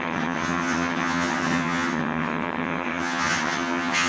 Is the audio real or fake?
fake